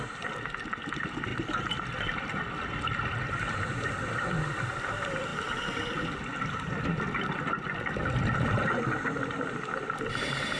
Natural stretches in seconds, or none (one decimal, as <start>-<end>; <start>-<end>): 0.0-10.6